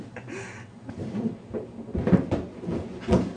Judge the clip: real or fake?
real